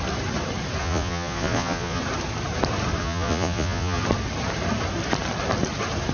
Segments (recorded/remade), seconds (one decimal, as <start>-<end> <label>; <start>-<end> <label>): 0.0-0.8 recorded; 0.8-2.0 remade; 2.0-3.0 recorded; 3.0-4.0 remade; 4.0-6.1 recorded